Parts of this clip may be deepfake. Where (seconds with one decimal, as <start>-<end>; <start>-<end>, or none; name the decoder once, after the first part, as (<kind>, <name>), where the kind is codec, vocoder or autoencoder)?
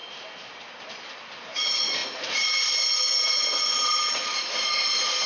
none